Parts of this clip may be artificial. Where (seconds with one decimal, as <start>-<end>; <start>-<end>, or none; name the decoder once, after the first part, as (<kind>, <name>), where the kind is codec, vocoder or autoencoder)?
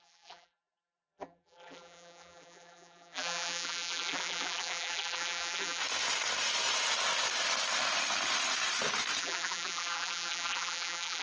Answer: 0.0-5.8 (vocoder, BigVGAN v2); 9.2-11.2